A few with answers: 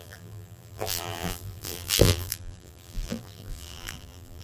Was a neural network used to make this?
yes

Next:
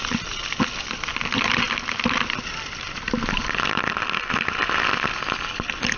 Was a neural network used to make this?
no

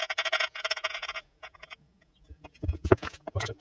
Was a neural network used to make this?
yes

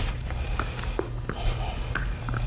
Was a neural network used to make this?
yes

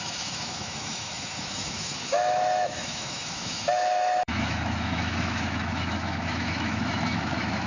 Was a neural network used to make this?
yes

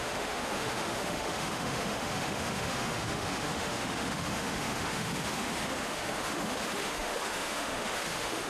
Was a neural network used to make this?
yes